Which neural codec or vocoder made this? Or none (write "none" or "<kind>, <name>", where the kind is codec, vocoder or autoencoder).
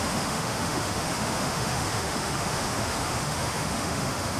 autoencoder, DAC-VAE